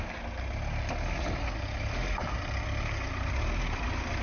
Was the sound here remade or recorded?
recorded